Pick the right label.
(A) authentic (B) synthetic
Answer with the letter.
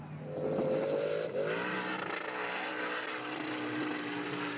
A